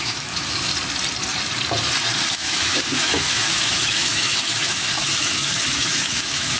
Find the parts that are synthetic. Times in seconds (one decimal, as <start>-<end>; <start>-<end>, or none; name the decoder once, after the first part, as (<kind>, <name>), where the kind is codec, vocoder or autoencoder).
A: 0.0-0.7 (autoencoder, DAC-VAE); 2.3-6.6